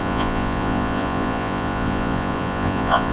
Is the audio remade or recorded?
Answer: remade